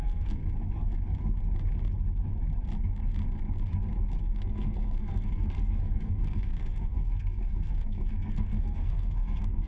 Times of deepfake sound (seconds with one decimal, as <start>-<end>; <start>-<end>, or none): 0.0-0.4; 4.2-9.7